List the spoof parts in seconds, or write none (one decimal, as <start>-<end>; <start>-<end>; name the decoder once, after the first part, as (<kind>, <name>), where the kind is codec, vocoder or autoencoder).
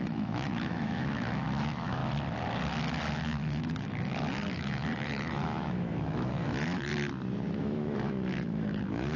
0.0-2.0 (autoencoder, DAC-VAE); 3.1-6.9; 7.6-9.2